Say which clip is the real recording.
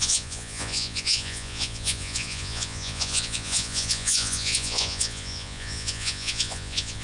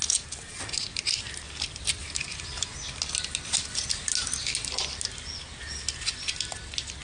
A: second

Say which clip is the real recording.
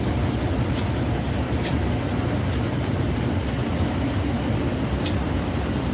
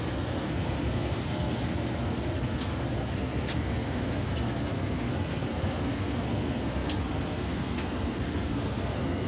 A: first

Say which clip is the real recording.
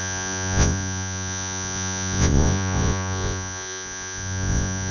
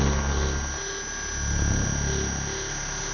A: second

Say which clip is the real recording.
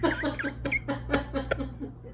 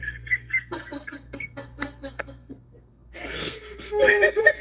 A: first